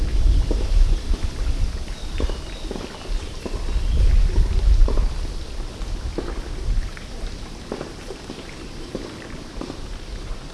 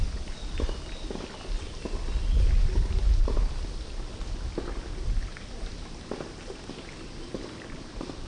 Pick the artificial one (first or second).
first